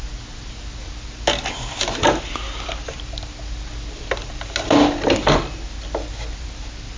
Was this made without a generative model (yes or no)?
yes